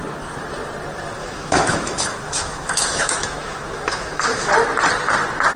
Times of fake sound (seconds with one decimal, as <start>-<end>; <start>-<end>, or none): 1.2-4.5